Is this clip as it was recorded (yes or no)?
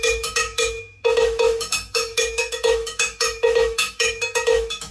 no